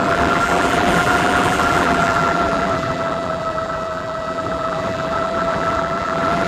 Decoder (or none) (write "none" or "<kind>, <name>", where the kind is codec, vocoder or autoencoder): vocoder, BigVGAN v2